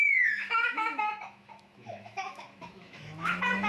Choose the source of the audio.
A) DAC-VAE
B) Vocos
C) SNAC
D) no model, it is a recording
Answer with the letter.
A